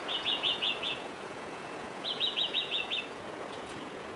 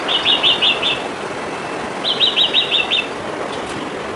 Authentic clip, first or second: second